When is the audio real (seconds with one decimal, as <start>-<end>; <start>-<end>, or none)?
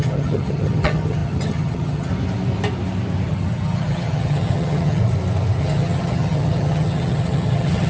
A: 2.1-3.3; 5.0-5.6